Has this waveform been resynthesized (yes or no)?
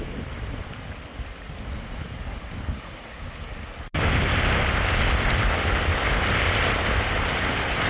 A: no